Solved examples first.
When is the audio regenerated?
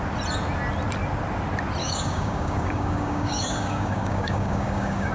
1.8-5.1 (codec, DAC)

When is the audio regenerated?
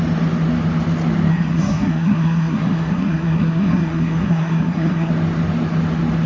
1.3-5.1 (codec, SNAC)